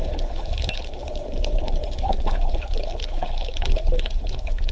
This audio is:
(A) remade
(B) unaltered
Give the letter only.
A